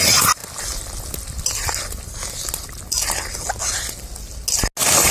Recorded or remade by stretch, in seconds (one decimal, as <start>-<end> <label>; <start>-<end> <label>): 0.0-5.1 recorded